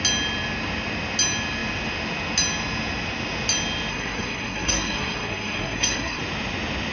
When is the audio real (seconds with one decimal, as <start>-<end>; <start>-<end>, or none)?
0.0-3.9; 6.2-6.9